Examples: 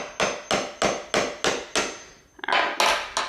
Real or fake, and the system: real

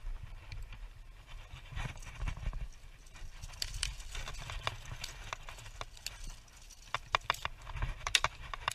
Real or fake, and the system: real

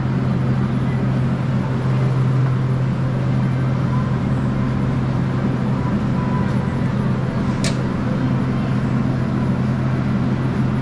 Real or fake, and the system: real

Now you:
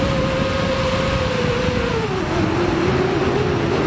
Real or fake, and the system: real